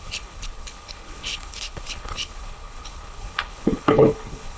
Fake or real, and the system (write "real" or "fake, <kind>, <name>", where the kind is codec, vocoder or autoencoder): fake, codec, HILCodec